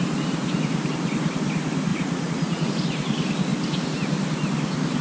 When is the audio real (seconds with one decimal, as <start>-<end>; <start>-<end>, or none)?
0.0-1.9; 2.7-5.0